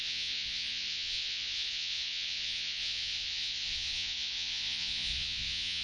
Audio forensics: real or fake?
fake